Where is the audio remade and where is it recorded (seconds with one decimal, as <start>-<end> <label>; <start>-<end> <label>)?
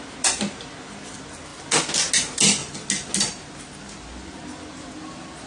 0.0-5.5 recorded